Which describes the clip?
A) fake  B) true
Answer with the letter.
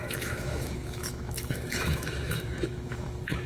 A